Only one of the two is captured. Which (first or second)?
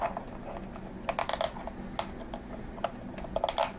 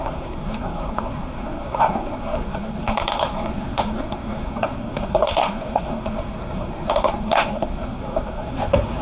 first